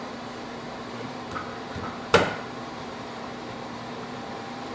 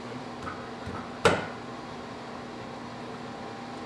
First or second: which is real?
second